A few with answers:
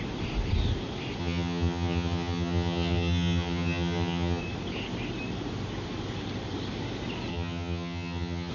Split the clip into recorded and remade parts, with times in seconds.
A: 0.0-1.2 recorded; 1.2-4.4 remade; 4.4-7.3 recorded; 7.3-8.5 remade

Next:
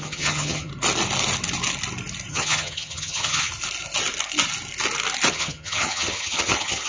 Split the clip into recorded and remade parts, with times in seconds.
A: 0.0-0.7 remade; 0.7-2.3 recorded; 2.3-3.5 remade; 3.5-5.3 recorded; 5.3-6.9 remade